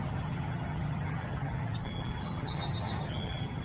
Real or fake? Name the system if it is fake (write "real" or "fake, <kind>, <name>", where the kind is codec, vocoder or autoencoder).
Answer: fake, vocoder, HiFi-GAN